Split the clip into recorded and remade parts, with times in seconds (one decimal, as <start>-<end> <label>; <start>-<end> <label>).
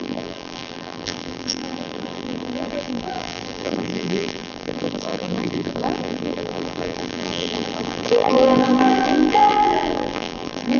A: 0.0-10.8 remade